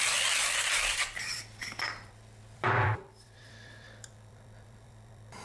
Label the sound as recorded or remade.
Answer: remade